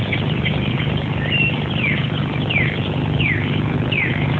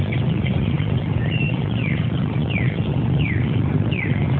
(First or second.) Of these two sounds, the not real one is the second